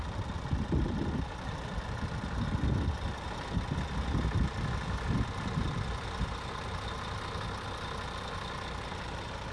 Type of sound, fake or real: real